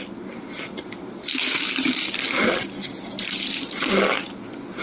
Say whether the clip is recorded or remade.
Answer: recorded